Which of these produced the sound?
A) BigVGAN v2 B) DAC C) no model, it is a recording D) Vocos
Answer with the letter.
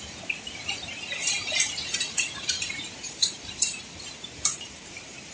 A